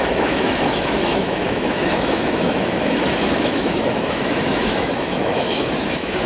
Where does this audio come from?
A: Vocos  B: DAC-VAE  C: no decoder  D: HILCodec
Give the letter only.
B